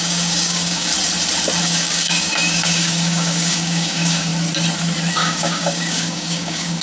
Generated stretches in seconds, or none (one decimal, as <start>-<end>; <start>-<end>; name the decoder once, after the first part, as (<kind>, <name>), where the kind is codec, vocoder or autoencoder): 0.0-0.9 (codec, DAC); 1.6-4.3; 5.1-6.8

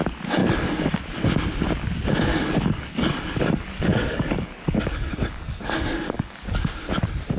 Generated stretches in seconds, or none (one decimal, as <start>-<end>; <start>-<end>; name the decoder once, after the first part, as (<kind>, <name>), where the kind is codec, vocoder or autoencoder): 0.4-1.0 (codec, DAC); 2.3-6.7

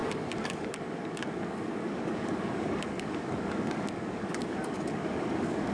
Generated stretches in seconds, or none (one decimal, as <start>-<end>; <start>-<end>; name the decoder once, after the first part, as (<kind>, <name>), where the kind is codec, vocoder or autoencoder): 0.0-5.7 (codec, DAC)

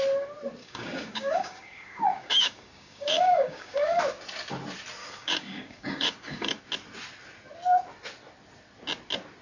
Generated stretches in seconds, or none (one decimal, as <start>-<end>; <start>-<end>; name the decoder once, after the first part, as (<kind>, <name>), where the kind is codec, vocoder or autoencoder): 0.6-4.0 (codec, DAC); 5.0-6.6